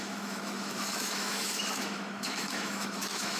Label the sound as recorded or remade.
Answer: remade